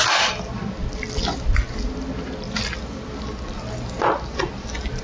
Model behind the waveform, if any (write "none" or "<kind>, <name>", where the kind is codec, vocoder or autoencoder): none